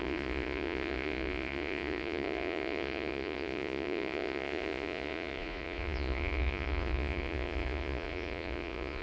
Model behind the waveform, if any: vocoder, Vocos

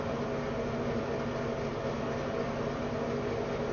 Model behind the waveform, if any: none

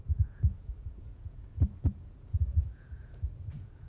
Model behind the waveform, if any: vocoder, Vocos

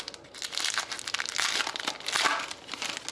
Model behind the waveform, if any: none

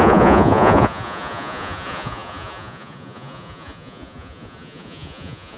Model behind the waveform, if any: vocoder, Vocos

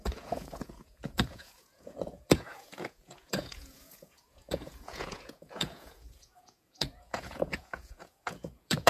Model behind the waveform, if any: vocoder, Vocos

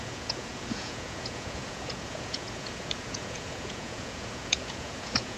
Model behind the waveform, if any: vocoder, Vocos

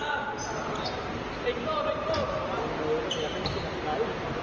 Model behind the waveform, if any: none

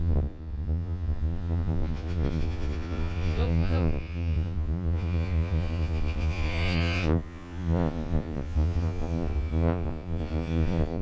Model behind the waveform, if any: vocoder, Vocos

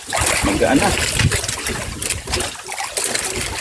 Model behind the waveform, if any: none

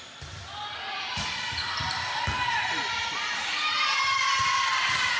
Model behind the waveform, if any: none